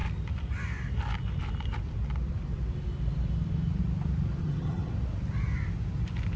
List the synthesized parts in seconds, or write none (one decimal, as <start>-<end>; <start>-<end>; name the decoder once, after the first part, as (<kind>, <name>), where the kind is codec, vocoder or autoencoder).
4.4-4.9 (vocoder, HiFi-GAN)